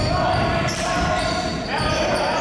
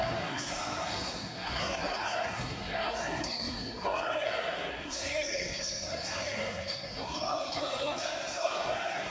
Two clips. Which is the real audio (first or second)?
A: first